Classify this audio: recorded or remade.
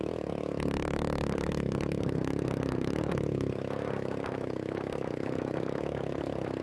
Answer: remade